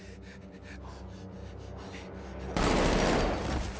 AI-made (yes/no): no